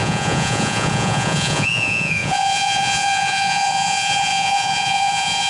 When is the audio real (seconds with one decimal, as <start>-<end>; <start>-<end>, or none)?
none